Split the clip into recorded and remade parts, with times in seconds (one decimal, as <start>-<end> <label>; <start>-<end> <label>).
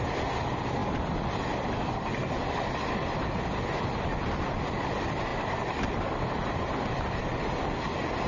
0.0-8.3 recorded